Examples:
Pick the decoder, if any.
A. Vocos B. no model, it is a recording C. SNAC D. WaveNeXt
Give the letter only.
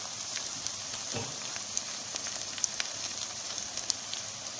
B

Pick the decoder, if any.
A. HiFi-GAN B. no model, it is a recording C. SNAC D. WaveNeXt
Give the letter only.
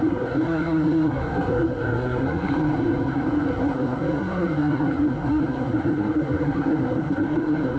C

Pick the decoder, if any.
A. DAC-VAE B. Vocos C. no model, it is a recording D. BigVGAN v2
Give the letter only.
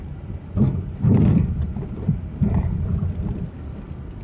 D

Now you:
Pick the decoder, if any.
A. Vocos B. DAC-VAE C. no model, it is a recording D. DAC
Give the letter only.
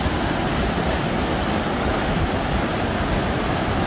C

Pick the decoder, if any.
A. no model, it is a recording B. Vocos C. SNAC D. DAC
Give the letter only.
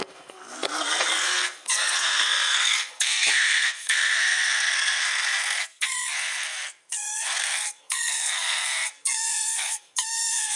C